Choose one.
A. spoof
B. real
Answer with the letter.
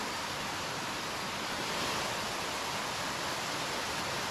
B